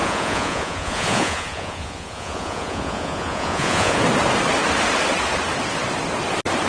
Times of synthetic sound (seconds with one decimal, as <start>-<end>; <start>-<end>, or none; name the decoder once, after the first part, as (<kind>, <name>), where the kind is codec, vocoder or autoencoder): 0.0-4.0 (vocoder, Vocos)